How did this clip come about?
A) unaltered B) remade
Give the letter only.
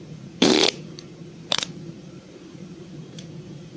B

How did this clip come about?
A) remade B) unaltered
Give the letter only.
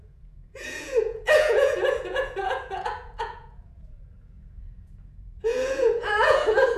A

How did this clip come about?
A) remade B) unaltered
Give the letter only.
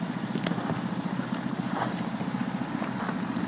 B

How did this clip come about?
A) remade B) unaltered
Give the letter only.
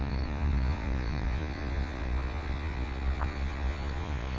A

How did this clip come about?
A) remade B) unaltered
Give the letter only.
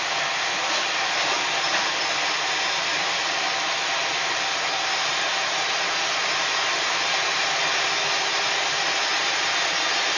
B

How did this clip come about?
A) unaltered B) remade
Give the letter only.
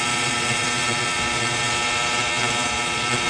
B